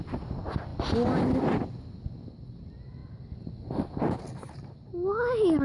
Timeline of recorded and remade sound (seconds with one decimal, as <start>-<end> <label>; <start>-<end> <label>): 0.0-3.0 recorded; 3.0-4.2 remade; 4.2-5.6 recorded